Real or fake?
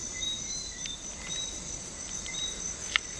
fake